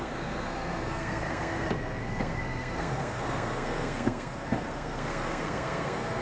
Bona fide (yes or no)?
no